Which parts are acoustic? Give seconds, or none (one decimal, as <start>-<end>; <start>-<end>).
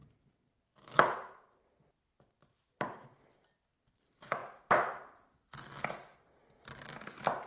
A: 0.0-7.5